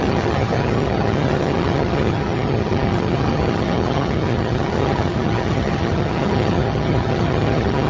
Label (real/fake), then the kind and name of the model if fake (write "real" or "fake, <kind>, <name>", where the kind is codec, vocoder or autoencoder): fake, vocoder, HiFi-GAN